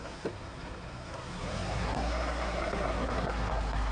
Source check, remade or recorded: remade